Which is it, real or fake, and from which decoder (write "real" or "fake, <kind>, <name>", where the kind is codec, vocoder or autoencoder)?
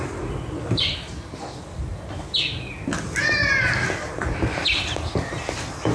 real